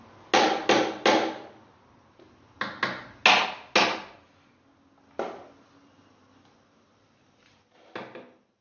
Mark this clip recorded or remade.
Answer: recorded